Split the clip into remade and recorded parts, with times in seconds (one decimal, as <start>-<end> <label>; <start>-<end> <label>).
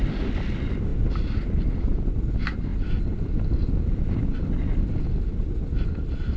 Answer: 0.0-6.4 recorded